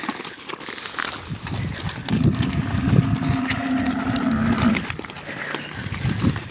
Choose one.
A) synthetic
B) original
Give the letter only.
B